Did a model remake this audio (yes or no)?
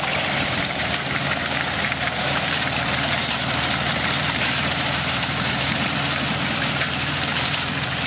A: yes